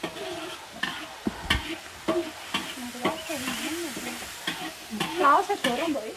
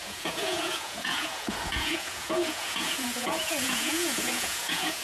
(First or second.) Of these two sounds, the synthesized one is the second